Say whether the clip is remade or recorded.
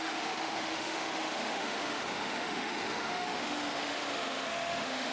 remade